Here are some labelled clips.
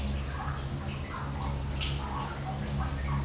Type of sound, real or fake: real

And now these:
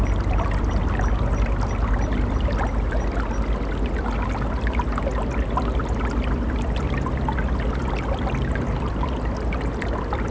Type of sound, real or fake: real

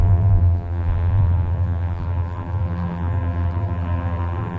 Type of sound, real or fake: fake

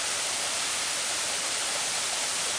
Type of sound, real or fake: fake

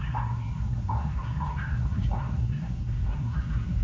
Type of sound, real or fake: fake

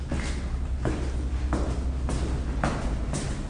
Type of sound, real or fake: real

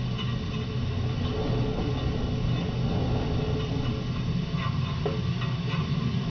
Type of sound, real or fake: real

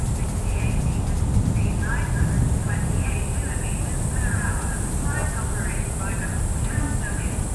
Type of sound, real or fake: real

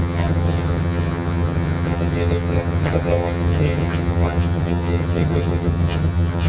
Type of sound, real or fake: fake